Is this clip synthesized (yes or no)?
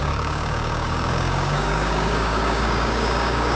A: yes